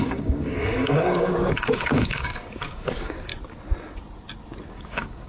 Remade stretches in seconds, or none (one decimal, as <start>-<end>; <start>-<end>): 0.0-3.3; 4.7-5.3